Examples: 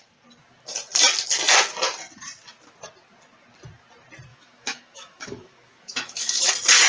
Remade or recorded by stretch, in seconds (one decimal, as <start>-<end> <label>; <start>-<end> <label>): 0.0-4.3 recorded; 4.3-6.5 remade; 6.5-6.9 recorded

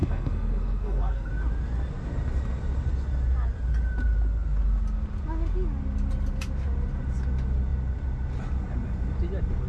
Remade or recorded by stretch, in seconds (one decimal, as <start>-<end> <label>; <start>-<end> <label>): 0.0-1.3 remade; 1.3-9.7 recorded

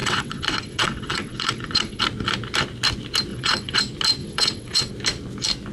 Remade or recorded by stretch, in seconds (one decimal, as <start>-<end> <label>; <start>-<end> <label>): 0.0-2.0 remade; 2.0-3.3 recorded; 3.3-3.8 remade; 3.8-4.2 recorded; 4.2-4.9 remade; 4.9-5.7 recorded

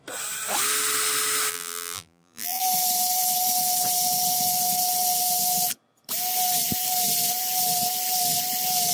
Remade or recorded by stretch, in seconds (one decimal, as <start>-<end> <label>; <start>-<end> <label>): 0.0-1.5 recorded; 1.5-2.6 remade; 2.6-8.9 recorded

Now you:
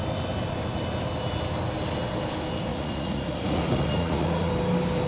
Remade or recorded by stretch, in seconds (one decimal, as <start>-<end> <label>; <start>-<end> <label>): 0.0-2.7 recorded; 2.7-4.5 remade; 4.5-5.1 recorded

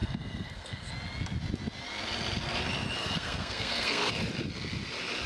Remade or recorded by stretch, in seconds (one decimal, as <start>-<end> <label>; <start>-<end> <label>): 0.0-0.9 remade; 0.9-3.0 recorded; 3.0-4.1 remade; 4.1-5.3 recorded